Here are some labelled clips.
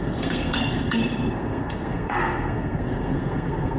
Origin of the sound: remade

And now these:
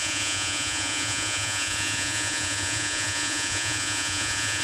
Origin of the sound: remade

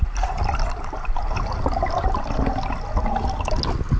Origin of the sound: recorded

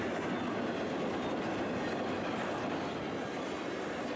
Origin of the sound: recorded